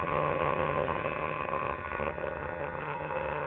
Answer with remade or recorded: remade